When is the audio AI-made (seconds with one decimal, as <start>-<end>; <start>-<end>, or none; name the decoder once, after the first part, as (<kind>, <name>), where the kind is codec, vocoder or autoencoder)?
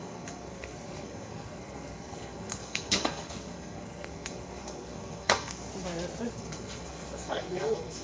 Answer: 0.0-5.7 (codec, SNAC); 6.3-8.0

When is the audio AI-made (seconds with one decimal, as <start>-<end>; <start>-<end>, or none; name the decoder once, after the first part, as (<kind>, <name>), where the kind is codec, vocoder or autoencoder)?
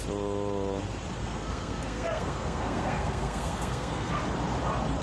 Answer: 1.2-4.2 (codec, SNAC)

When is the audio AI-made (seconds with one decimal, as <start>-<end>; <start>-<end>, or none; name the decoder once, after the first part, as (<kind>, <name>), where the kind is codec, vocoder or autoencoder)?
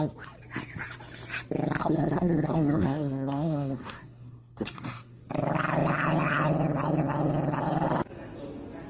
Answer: 1.8-5.2 (codec, SNAC)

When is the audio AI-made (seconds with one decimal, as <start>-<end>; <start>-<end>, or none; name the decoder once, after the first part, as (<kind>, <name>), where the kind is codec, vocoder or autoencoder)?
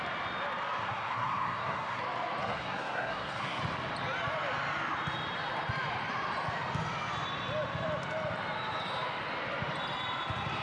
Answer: 0.8-2.0 (codec, SNAC); 2.4-3.6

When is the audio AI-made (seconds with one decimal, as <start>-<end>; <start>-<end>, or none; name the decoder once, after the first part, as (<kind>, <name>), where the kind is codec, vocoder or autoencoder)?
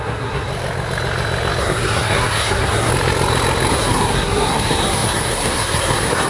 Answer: 0.0-0.5 (codec, SNAC); 1.6-2.9; 3.7-6.3